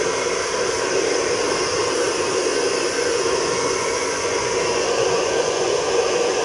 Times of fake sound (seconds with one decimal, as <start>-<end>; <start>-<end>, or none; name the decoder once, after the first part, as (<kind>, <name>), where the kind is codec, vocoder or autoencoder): 2.5-6.4 (vocoder, Vocos)